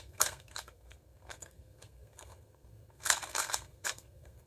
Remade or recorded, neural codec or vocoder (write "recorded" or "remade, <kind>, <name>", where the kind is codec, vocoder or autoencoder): remade, codec, SNAC